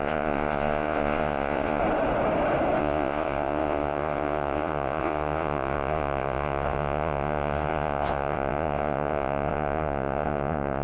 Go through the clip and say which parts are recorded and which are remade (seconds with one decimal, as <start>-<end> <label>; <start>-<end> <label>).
0.0-1.8 remade; 1.8-2.8 recorded; 2.8-10.8 remade